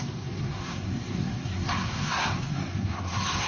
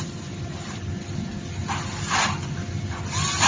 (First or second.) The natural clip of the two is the second